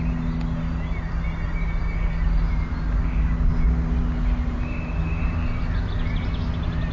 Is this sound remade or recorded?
recorded